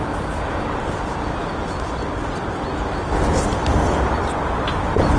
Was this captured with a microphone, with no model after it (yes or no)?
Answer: yes